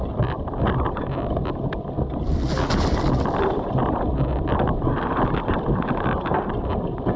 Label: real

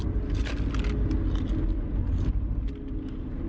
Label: real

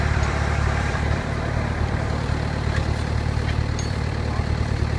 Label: fake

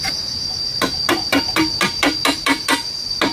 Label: fake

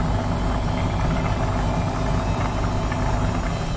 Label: real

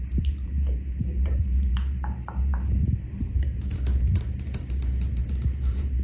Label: fake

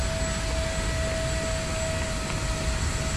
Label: real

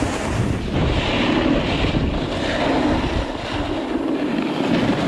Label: real